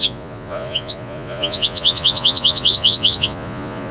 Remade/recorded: remade